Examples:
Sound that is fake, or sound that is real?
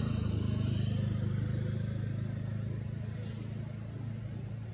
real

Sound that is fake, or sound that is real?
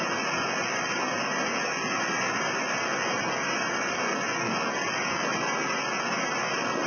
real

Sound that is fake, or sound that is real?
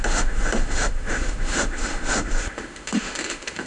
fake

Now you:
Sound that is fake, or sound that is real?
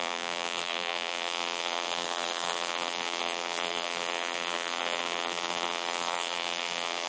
fake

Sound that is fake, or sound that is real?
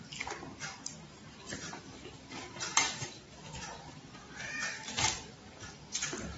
fake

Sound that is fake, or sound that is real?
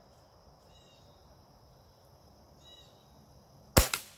real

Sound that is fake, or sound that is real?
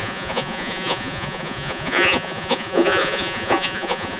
fake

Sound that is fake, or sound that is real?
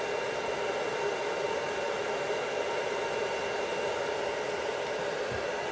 real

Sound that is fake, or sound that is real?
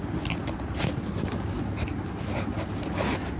real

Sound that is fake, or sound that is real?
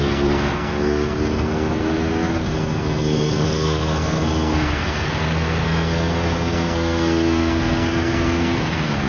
fake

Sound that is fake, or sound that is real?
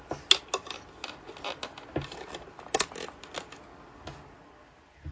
real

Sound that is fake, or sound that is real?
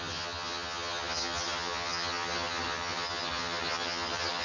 fake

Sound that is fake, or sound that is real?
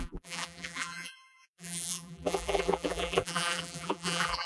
fake